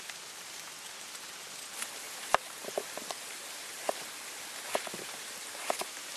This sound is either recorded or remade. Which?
recorded